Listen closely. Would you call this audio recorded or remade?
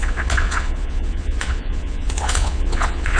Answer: remade